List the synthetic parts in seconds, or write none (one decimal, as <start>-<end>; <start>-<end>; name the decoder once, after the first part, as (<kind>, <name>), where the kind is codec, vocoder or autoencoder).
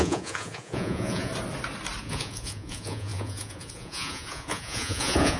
0.0-1.3 (vocoder, Vocos); 2.0-5.4